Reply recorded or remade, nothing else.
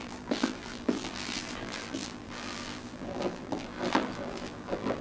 remade